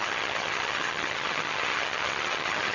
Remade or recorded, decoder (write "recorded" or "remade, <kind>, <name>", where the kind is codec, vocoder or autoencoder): remade, vocoder, HiFi-GAN